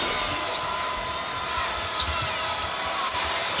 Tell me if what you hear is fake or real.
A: real